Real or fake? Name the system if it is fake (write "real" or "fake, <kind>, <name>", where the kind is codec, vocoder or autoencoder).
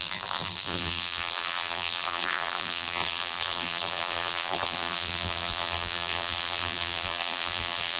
fake, vocoder, BigVGAN v2